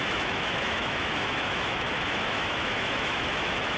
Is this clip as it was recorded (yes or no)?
no